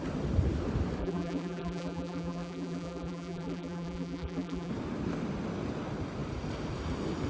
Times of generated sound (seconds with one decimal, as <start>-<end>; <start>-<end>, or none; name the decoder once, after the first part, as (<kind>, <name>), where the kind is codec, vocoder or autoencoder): 1.0-4.7 (vocoder, BigVGAN v2)